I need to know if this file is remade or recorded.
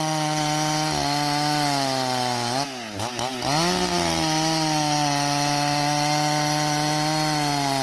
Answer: recorded